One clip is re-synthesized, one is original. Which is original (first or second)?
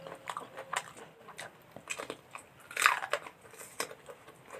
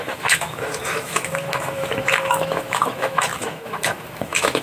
first